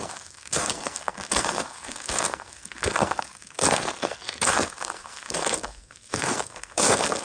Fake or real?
fake